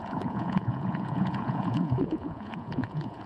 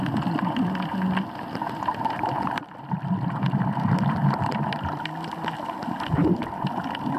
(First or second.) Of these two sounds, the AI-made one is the first